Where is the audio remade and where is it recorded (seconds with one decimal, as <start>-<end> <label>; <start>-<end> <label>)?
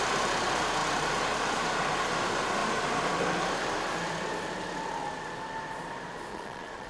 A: 0.0-6.3 recorded; 6.3-6.9 remade